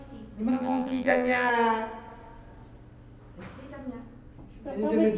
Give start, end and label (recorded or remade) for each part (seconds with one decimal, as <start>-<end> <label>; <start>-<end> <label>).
0.0-0.5 recorded; 0.5-1.5 remade; 1.5-5.2 recorded